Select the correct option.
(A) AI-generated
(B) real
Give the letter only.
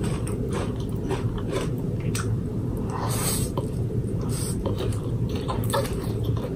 A